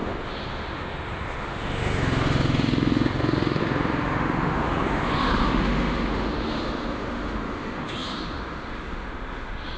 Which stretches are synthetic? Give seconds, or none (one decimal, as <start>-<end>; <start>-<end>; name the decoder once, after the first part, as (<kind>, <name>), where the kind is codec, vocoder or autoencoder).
0.0-9.8 (autoencoder, DAC-VAE)